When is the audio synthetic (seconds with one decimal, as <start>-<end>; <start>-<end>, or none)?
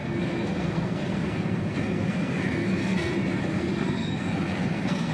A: 0.0-3.1; 3.5-5.1